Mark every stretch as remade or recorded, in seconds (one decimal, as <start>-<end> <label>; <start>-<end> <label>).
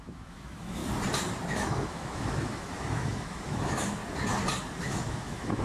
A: 0.0-0.8 remade; 0.8-1.5 recorded; 1.5-4.0 remade; 4.0-4.8 recorded; 4.8-5.6 remade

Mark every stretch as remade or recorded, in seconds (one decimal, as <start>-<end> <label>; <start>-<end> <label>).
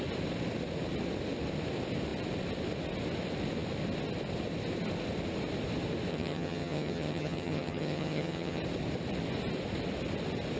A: 0.0-6.1 recorded; 6.1-8.6 remade; 8.6-10.6 recorded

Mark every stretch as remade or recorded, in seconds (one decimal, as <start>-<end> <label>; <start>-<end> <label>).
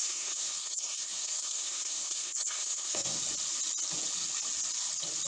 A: 0.0-3.2 remade; 3.2-5.3 recorded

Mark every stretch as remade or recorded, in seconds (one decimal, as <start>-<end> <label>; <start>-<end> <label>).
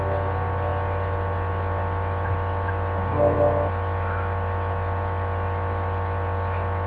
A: 0.0-6.9 recorded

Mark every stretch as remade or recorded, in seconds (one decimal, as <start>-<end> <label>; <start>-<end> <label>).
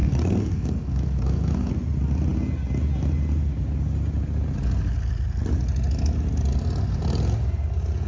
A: 0.0-1.7 remade; 1.7-8.1 recorded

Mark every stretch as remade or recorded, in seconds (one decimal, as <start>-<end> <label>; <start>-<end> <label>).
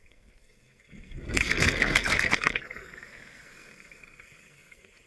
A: 0.0-5.1 remade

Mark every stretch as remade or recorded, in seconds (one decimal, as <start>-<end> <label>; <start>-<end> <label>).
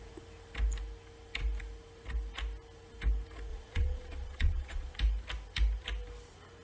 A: 0.0-3.5 recorded; 3.5-5.0 remade; 5.0-6.6 recorded